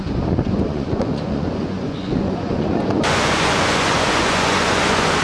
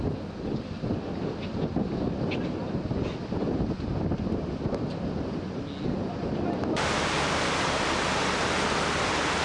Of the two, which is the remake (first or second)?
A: first